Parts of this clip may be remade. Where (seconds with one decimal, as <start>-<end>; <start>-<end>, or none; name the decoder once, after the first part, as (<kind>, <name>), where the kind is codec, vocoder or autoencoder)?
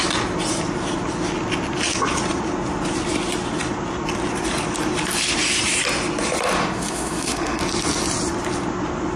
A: 6.6-7.6 (autoencoder, DAC-VAE)